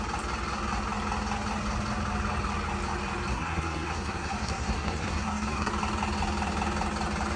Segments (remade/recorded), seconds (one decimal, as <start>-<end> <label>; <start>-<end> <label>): 0.0-3.3 recorded; 3.3-5.7 remade; 5.7-7.4 recorded